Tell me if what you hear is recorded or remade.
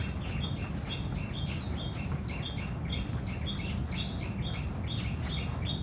recorded